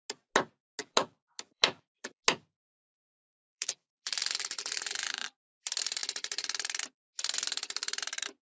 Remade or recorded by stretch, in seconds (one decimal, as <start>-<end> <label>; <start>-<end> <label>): 0.0-0.8 recorded; 0.8-2.2 remade; 2.2-3.1 recorded; 3.1-5.6 remade; 5.6-8.5 recorded